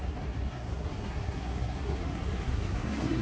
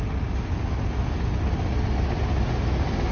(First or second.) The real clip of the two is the second